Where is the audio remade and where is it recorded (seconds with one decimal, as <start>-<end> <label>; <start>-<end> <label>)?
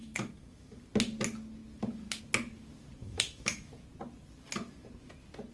0.0-0.8 remade; 0.8-3.0 recorded; 3.0-3.7 remade; 3.7-5.5 recorded